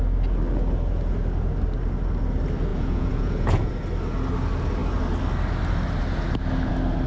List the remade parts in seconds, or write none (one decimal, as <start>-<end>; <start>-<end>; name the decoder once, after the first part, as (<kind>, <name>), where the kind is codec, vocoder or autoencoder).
2.7-3.7 (vocoder, Vocos)